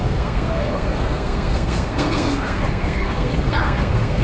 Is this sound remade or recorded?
remade